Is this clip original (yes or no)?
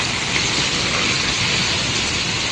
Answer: yes